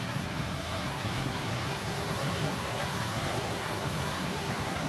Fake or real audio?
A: fake